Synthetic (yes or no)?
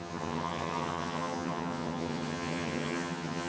yes